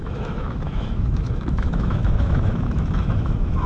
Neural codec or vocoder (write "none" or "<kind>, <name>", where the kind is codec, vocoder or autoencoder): autoencoder, DAC-VAE